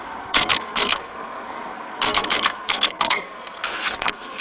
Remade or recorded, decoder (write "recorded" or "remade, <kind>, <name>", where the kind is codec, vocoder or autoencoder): remade, codec, SNAC